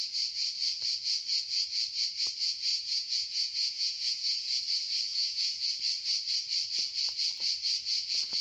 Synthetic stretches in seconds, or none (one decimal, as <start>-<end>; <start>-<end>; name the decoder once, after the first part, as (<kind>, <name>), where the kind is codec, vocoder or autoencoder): 2.7-4.6 (vocoder, Vocos); 5.1-5.7